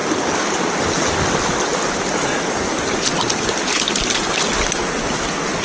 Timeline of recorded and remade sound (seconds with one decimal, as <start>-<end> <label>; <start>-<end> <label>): 0.0-5.6 recorded